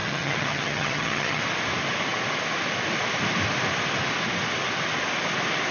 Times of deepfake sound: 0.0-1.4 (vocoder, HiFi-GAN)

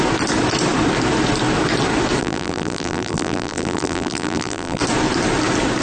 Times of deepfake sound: 2.2-4.8 (vocoder, BigVGAN v2)